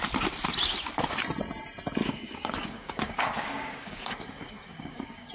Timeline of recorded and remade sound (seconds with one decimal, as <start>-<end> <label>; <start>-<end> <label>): 0.0-2.0 recorded; 2.0-5.3 remade